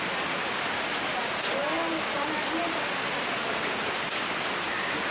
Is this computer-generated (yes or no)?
no